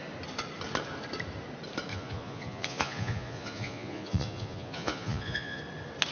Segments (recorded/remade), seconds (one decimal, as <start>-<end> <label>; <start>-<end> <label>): 0.0-1.9 recorded; 1.9-5.6 remade; 5.6-6.1 recorded